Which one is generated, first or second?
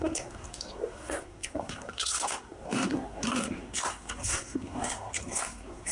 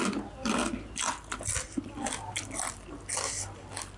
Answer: first